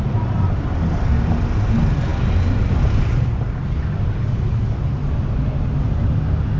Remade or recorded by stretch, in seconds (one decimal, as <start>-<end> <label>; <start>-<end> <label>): 0.0-6.6 recorded